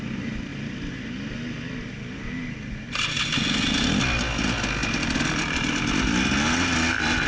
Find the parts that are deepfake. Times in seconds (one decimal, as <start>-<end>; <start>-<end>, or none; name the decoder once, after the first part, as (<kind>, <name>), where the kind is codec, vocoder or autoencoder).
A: none